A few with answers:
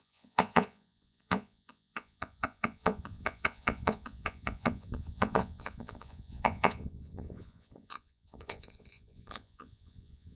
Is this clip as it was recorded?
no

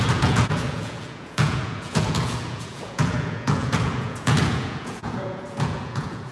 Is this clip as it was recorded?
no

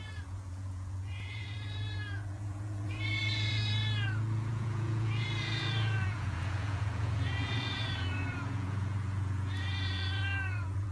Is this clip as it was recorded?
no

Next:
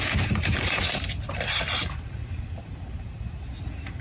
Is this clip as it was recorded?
yes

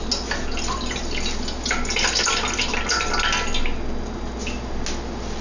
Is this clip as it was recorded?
yes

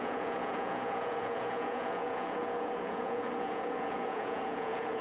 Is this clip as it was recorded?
no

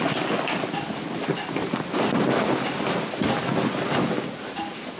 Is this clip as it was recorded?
yes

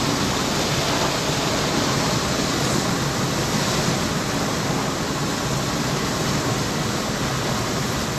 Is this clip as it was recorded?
yes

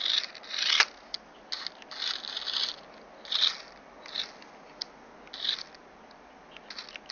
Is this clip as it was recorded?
yes